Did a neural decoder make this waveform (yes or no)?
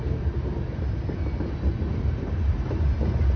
no